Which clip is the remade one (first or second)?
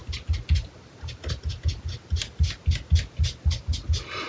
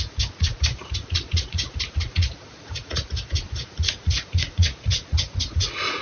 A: second